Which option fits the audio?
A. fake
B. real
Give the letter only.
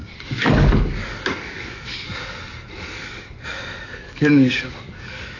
A